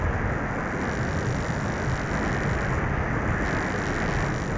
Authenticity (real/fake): real